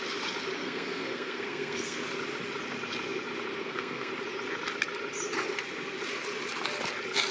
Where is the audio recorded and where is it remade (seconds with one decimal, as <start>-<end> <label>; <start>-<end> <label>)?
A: 0.0-0.6 recorded; 0.6-2.0 remade; 2.0-3.6 recorded; 3.6-4.1 remade; 4.1-7.3 recorded

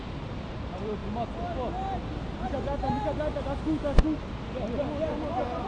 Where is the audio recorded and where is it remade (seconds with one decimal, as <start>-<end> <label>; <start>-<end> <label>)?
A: 0.0-5.7 recorded

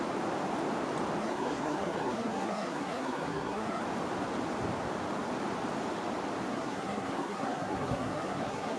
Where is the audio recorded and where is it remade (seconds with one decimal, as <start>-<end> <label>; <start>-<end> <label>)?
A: 0.0-1.2 recorded; 1.2-3.8 remade; 3.8-6.5 recorded; 6.5-8.8 remade

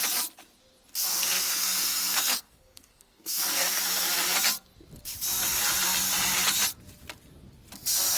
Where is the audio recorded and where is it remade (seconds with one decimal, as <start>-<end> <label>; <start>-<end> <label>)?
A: 0.0-1.1 recorded; 1.1-3.8 remade; 3.8-8.2 recorded

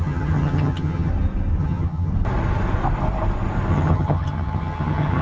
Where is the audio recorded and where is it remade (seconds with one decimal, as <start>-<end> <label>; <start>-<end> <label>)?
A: 0.0-1.1 remade; 1.1-1.6 recorded; 1.6-2.1 remade; 2.1-3.7 recorded; 3.7-5.2 remade

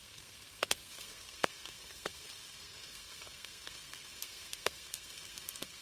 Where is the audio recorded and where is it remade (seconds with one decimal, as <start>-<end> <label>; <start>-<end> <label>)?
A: 0.0-5.8 remade

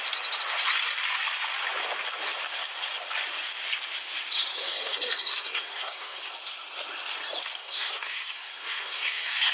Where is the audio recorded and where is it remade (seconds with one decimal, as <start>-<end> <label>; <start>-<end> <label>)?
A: 0.0-4.5 recorded; 4.5-6.3 remade; 6.3-7.6 recorded; 7.6-9.5 remade

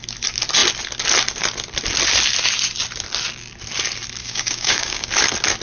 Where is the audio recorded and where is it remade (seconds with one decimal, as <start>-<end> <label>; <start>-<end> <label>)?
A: 0.0-4.2 recorded; 4.2-5.1 remade; 5.1-5.6 recorded